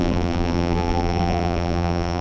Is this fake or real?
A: fake